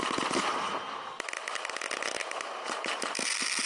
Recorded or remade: recorded